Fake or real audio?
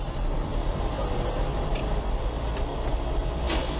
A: real